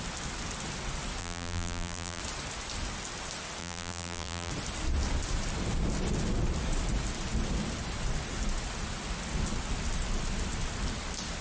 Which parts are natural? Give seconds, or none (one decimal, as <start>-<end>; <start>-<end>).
0.0-1.2; 2.2-3.6; 4.5-11.4